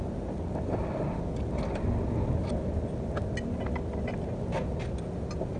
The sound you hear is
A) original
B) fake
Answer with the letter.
A